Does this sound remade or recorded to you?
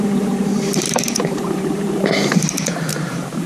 remade